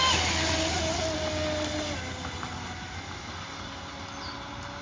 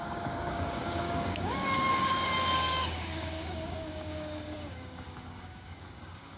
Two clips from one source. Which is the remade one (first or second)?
second